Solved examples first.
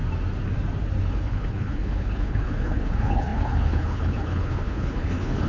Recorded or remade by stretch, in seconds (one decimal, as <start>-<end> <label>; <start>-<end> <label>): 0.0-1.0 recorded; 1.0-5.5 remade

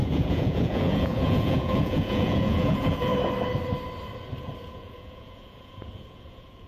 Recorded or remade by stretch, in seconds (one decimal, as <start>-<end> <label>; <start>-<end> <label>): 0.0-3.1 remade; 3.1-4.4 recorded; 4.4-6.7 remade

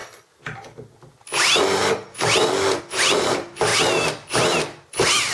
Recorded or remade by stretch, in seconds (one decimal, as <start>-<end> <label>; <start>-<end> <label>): 0.0-5.3 recorded

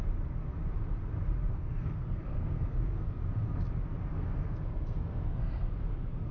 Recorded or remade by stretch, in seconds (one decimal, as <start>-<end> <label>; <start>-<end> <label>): 0.0-1.5 recorded; 1.5-3.2 remade; 3.2-4.1 recorded; 4.1-6.3 remade